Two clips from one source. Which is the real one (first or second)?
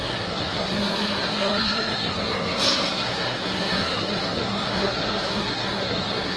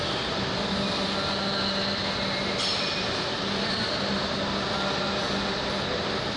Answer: second